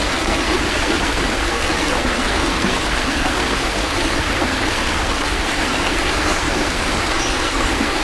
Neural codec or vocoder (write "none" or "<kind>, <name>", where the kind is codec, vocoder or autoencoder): codec, SNAC